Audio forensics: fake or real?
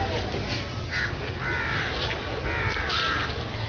real